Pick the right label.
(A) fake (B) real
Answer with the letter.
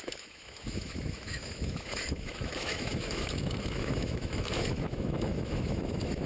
A